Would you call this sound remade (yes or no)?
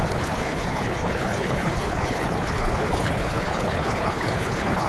yes